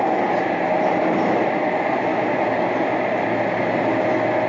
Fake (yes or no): no